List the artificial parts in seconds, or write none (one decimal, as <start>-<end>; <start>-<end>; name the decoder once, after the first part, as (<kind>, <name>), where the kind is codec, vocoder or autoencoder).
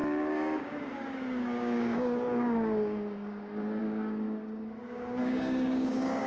0.0-6.3 (codec, DAC)